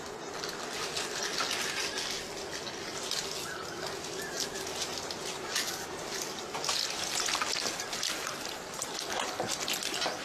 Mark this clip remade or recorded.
recorded